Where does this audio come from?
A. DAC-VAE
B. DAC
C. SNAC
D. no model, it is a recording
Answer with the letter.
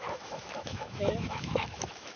A